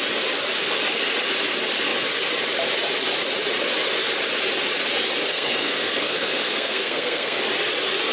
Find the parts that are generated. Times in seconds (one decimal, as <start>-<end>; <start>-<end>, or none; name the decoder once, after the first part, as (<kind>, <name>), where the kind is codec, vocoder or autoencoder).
5.3-7.4 (codec, SNAC)